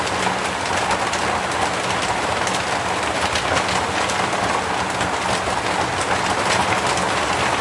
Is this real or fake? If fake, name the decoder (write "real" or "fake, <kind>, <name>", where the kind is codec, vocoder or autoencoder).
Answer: real